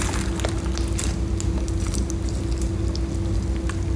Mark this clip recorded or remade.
recorded